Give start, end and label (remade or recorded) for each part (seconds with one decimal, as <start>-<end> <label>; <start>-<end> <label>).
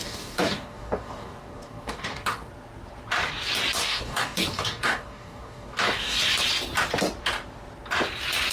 0.0-2.5 remade; 2.5-3.8 recorded; 3.8-6.2 remade; 6.2-8.5 recorded